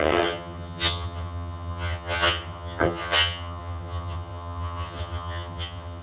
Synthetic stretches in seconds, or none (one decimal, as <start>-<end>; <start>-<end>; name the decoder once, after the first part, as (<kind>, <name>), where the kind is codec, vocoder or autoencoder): 0.0-6.0 (vocoder, HiFi-GAN)